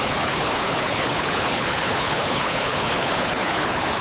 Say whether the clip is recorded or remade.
remade